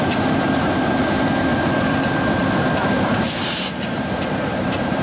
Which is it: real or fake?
fake